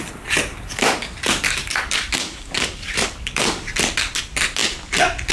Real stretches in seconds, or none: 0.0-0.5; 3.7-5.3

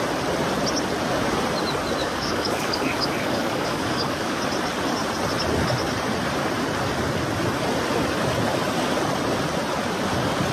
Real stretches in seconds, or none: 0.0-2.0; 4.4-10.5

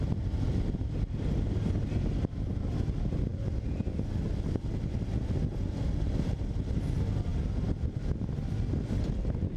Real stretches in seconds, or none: 0.0-9.6